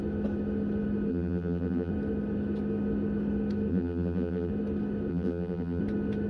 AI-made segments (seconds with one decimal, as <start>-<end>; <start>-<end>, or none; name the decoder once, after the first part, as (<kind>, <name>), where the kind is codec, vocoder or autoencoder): 1.1-1.9 (vocoder, BigVGAN v2); 3.7-4.5; 5.1-5.8